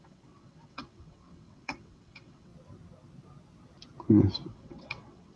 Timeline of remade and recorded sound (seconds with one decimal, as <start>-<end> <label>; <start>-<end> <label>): 0.0-2.5 remade; 2.5-4.5 recorded; 4.5-5.4 remade